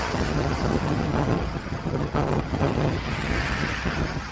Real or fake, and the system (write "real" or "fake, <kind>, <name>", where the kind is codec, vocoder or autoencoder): fake, vocoder, HiFi-GAN